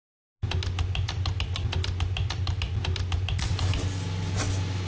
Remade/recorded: recorded